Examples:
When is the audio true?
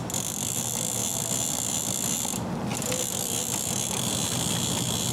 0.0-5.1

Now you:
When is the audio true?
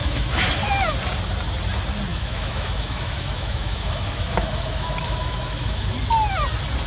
0.5-2.1; 5.9-6.9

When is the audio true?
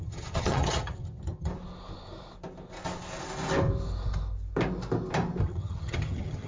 1.5-5.4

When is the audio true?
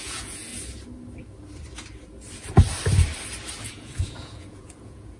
0.5-3.6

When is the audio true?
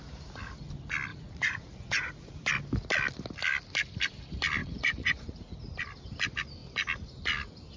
0.0-1.1; 2.5-4.6; 5.7-7.8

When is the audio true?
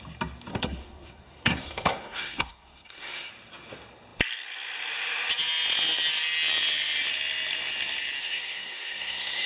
0.0-0.5; 3.3-8.2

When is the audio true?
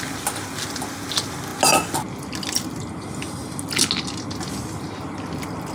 0.0-5.7